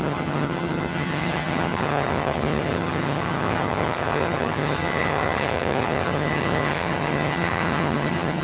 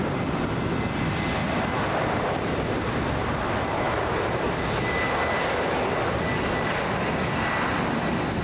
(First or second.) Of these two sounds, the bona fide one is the second